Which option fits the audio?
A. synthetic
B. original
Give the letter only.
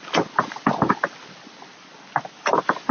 B